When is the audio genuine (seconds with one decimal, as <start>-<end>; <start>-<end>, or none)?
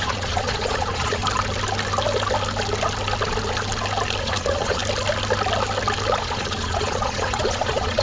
1.2-4.2; 4.8-6.2